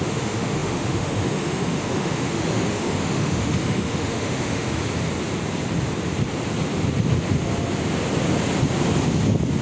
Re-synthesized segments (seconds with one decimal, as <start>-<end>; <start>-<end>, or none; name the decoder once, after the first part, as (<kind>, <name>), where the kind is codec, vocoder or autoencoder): 0.0-4.8 (autoencoder, DAC-VAE)